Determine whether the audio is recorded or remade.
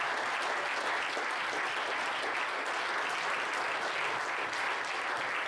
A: recorded